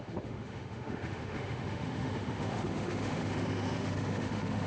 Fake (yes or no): yes